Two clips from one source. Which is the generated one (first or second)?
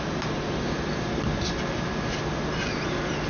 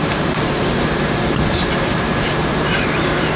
second